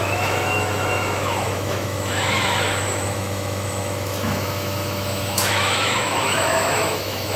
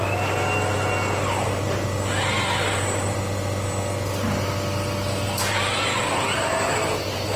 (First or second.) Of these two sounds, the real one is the second